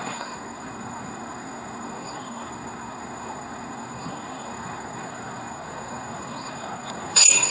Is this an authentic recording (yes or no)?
no